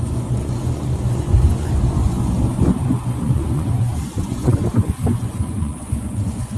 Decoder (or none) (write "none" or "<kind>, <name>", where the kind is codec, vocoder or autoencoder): vocoder, Vocos